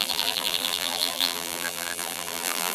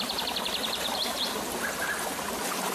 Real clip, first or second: second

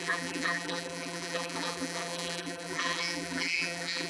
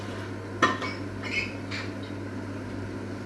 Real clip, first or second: second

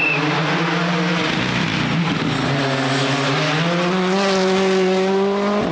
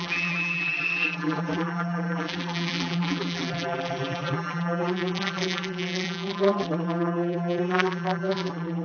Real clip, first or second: first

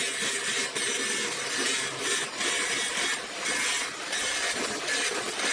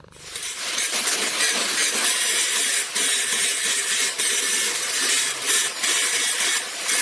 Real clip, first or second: first